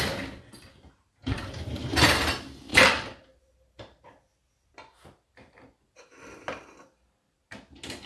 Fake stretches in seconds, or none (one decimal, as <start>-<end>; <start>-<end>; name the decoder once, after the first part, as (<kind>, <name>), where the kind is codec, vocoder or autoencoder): 1.2-2.3 (vocoder, BigVGAN v2); 2.7-4.0